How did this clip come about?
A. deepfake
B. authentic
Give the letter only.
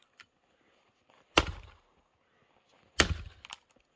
B